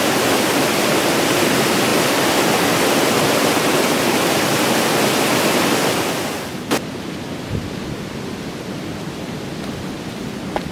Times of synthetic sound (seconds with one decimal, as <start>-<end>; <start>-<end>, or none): none